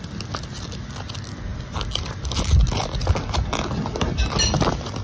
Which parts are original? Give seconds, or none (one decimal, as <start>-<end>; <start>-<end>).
0.0-5.0